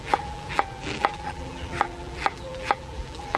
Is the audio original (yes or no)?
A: no